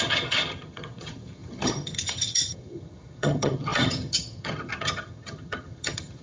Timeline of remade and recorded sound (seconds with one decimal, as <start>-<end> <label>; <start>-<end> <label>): 0.0-6.2 remade